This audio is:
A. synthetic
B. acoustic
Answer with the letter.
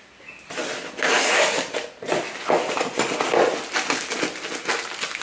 B